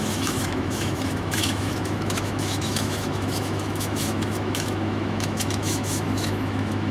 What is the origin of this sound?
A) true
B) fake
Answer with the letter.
B